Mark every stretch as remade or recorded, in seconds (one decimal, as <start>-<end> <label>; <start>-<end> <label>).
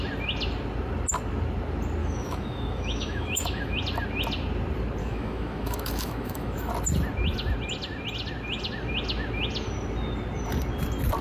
0.0-2.0 recorded; 2.0-3.8 remade; 3.8-5.0 recorded; 5.0-6.7 remade; 6.7-11.2 recorded